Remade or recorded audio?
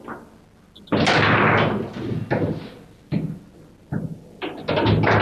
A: recorded